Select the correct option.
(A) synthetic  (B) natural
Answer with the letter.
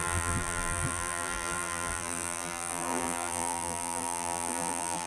A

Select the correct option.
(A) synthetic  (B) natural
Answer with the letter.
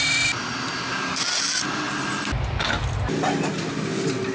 B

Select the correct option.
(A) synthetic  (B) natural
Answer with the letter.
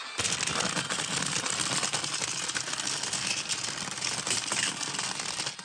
B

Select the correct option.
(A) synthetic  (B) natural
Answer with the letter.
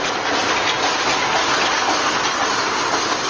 B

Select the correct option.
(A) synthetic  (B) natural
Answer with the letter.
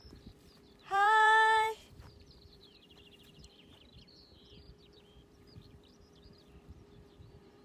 A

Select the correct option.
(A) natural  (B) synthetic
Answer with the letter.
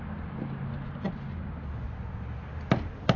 A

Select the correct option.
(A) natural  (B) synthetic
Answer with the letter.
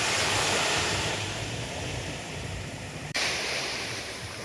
B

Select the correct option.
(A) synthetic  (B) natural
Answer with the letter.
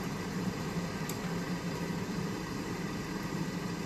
A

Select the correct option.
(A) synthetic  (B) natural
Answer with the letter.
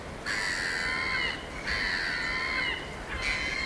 B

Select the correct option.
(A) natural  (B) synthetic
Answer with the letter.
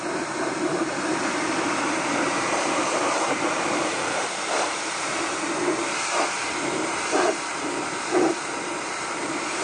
B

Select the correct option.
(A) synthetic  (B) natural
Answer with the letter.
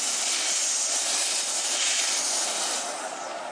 B